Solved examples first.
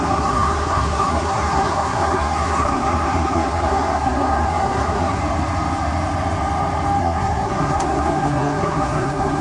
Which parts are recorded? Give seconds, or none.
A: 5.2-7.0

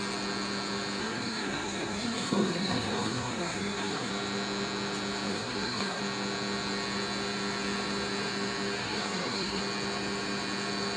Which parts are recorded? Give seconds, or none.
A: 0.0-1.0; 4.1-5.3; 6.0-8.8; 9.6-11.0

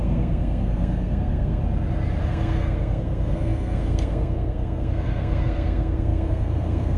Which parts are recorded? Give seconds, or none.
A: 1.6-2.2

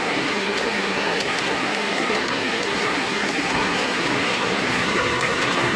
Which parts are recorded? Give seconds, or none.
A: none

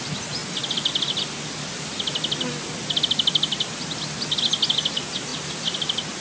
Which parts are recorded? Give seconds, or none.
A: 0.0-6.2